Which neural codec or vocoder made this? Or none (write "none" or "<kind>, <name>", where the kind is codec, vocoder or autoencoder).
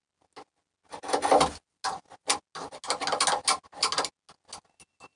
none